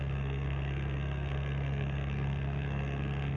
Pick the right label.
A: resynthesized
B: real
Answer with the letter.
A